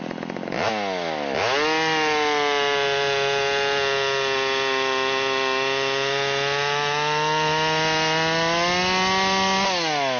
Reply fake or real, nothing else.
real